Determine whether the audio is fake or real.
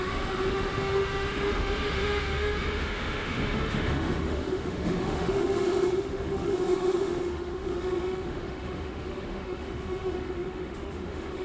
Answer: fake